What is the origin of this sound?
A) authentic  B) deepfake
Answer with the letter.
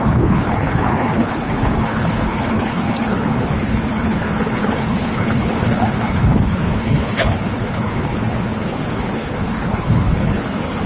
B